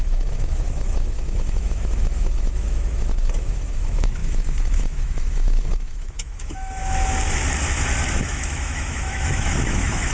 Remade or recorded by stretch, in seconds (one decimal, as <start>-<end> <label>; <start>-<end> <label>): 0.0-6.8 remade; 6.8-8.1 recorded; 8.1-10.1 remade